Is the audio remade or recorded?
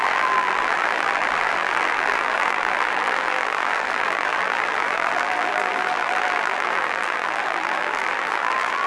remade